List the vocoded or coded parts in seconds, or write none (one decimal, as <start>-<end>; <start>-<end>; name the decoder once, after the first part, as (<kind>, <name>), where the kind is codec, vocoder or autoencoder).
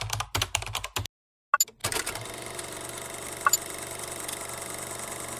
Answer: none